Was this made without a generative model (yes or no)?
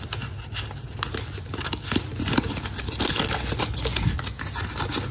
yes